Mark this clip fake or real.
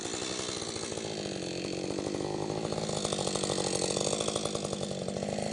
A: real